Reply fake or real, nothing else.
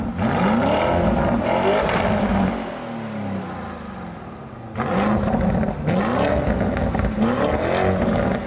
real